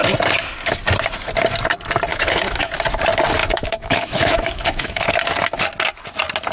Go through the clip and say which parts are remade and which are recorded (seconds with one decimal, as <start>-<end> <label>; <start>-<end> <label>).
0.0-2.1 recorded; 2.1-2.7 remade; 2.7-3.4 recorded; 3.4-5.1 remade; 5.1-6.5 recorded